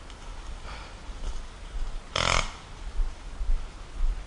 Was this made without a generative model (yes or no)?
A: yes